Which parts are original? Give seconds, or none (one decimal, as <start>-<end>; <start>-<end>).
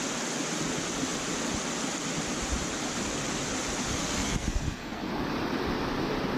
0.0-4.0; 5.1-6.4